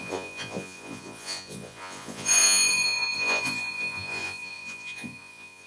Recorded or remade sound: remade